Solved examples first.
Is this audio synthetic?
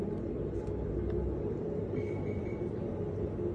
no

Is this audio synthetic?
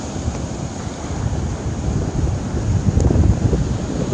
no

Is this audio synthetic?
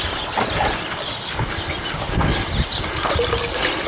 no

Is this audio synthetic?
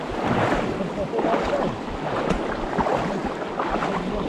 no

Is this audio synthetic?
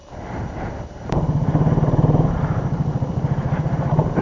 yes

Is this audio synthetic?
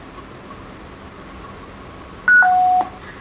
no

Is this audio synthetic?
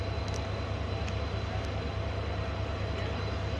no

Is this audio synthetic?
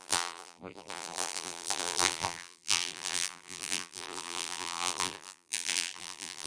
yes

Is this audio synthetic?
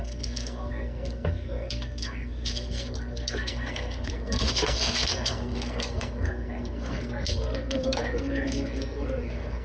yes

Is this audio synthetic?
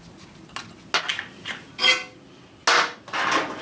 no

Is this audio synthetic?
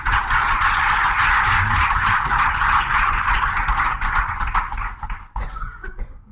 yes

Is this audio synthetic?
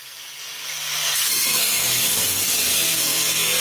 yes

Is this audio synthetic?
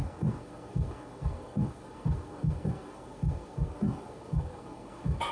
yes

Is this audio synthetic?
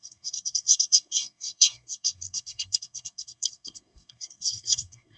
yes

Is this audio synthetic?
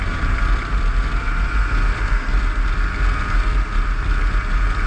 no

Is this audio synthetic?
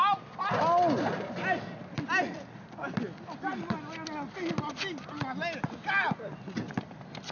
no